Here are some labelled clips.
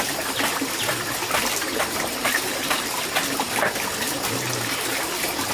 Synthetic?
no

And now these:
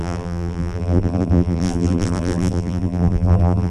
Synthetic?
yes